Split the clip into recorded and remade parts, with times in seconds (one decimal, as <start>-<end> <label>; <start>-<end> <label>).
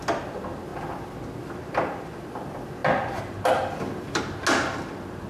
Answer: 0.0-5.3 recorded